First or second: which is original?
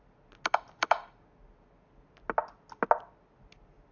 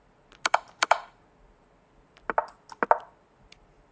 first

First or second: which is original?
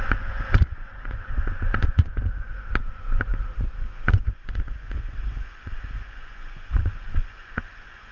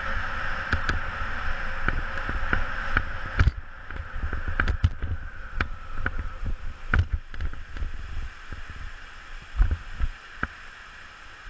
second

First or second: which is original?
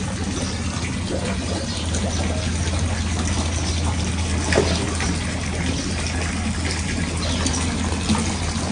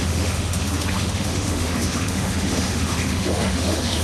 first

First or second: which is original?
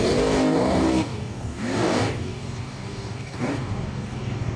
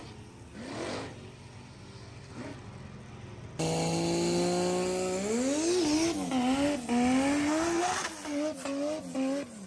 second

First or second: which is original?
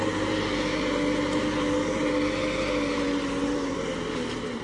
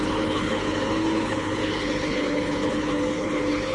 first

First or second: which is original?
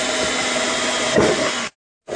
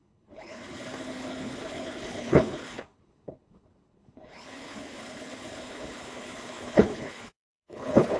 first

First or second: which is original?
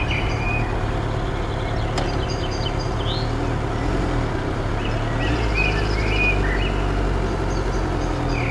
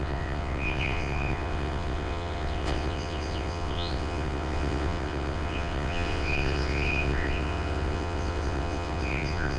first